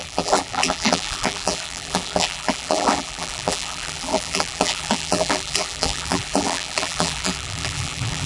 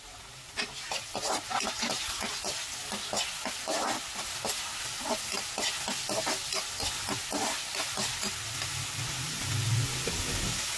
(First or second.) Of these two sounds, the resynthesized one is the first